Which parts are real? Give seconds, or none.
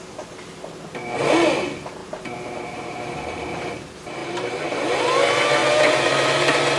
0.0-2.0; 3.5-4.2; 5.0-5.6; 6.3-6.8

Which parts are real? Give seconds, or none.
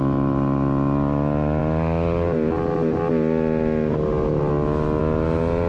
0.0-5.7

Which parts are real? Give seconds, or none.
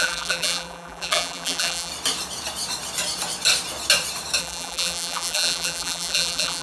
1.9-4.4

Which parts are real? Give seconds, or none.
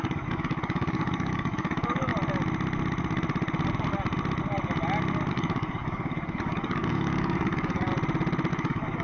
2.1-5.3; 7.9-8.5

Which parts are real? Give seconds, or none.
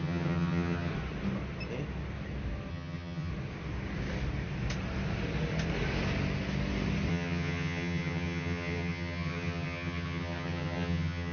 0.9-2.7; 3.3-7.1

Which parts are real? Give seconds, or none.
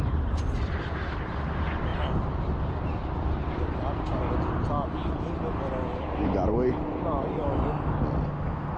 0.0-8.8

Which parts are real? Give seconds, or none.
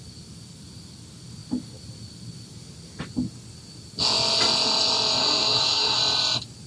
0.0-5.2; 6.0-6.7